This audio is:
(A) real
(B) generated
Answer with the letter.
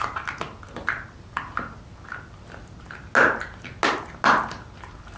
A